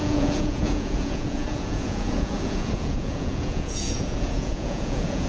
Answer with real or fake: fake